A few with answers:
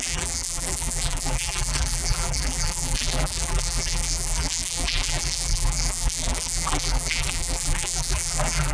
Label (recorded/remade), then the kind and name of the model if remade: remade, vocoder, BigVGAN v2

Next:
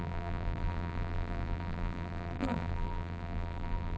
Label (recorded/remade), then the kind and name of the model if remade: remade, vocoder, BigVGAN v2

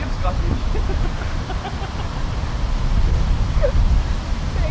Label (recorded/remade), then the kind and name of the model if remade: recorded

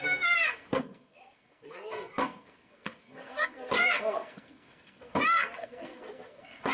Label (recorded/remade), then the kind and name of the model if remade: remade, codec, SNAC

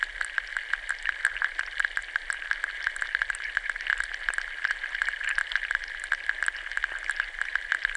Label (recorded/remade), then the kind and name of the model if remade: recorded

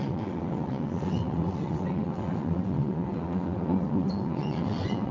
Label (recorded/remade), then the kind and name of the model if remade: remade, vocoder, WaveNeXt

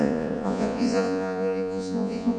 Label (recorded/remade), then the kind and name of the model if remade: remade, vocoder, Vocos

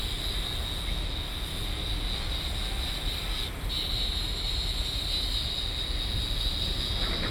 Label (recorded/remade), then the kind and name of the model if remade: recorded